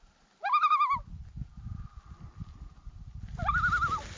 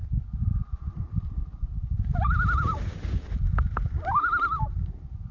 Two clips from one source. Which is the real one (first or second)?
first